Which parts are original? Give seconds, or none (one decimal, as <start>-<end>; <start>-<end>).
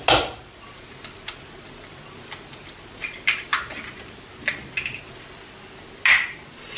0.0-6.8